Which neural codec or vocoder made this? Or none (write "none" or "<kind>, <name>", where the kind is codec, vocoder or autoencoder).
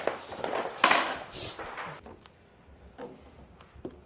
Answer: none